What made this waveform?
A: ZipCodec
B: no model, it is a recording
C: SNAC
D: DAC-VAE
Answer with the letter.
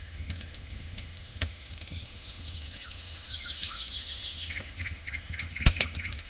D